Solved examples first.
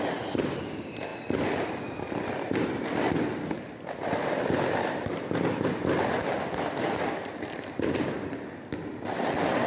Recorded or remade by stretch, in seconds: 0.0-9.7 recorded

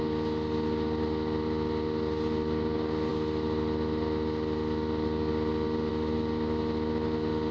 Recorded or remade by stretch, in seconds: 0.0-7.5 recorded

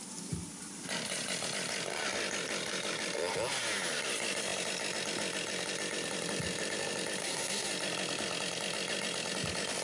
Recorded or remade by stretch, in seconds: 0.0-7.2 recorded; 7.2-7.7 remade; 7.7-9.8 recorded

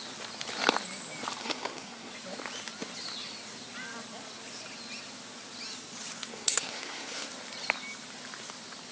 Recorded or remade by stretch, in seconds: 0.0-1.4 recorded; 1.4-2.1 remade; 2.1-6.3 recorded; 6.3-7.3 remade; 7.3-8.9 recorded

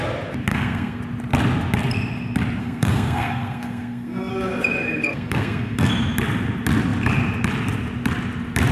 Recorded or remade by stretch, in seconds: 0.0-0.5 recorded; 0.5-1.0 remade; 1.0-2.6 recorded; 2.6-4.3 remade; 4.3-5.1 recorded; 5.1-5.9 remade; 5.9-8.7 recorded